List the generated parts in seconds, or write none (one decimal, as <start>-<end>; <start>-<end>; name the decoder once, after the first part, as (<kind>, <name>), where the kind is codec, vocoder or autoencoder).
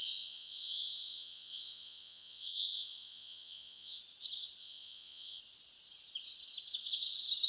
0.0-4.0 (vocoder, Vocos); 4.6-5.4